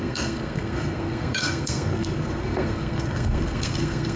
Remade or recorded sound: remade